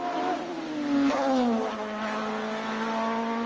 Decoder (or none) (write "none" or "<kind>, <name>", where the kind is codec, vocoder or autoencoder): none